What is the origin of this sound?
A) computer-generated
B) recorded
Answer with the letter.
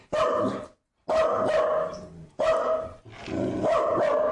B